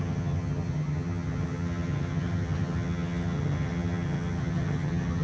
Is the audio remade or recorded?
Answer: remade